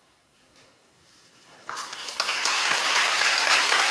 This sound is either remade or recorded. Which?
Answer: remade